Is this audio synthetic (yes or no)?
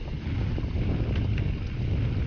no